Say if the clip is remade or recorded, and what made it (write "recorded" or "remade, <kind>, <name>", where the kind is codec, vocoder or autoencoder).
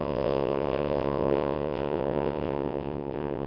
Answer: remade, vocoder, WaveNeXt